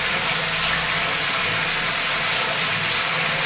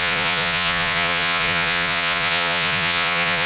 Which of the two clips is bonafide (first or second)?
first